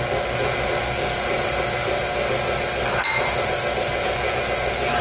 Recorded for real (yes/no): yes